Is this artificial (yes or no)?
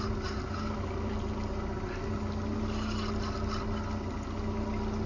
no